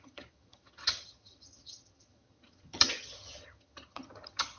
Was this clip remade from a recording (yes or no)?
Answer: yes